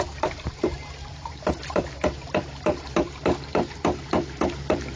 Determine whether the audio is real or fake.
fake